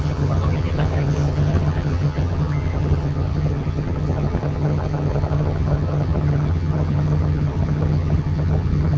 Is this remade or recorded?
remade